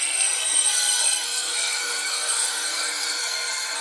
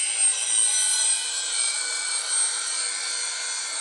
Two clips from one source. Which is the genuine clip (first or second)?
second